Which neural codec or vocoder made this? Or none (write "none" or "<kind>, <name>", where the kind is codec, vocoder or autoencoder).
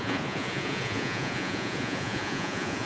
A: vocoder, Vocos